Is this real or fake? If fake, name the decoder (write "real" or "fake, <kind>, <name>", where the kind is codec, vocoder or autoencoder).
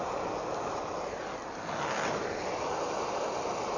real